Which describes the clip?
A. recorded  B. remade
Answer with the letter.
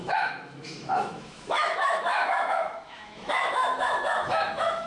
B